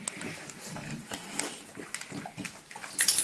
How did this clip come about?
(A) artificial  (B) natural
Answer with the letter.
B